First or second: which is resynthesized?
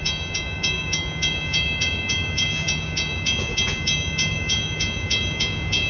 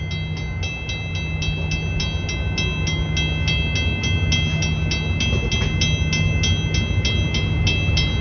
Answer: first